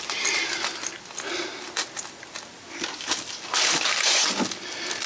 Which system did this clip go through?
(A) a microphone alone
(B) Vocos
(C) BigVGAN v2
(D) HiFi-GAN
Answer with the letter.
A